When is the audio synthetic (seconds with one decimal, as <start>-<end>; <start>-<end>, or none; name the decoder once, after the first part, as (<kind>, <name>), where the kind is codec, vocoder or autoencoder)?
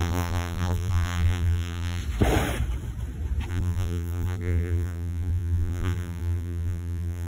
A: 0.0-2.0 (vocoder, BigVGAN v2); 3.5-7.3